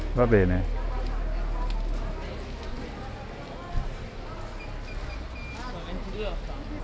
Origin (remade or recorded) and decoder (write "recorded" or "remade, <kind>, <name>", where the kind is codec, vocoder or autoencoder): recorded